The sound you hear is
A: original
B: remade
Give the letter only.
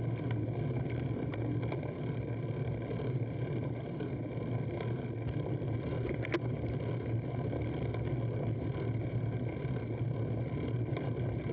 A